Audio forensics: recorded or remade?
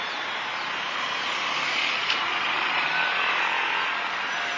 recorded